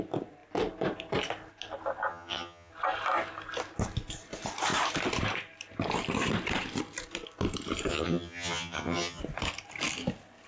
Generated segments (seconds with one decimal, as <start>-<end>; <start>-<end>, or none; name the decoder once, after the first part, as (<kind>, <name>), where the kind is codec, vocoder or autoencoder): 2.1-2.7 (vocoder, HiFi-GAN); 7.9-9.2